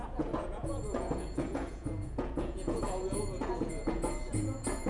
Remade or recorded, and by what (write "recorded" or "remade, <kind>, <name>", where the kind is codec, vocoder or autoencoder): remade, vocoder, Vocos